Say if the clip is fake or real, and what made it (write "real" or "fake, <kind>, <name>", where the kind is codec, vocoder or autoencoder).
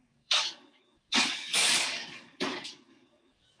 fake, codec, DAC